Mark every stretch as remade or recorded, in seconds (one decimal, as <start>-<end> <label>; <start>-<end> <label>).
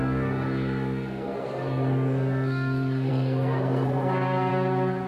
0.0-4.5 remade; 4.5-5.1 recorded